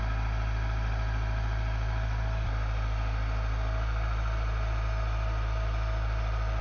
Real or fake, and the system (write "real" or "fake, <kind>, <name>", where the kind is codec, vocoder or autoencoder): real